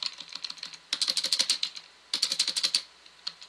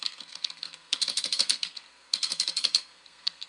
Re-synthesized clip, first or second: second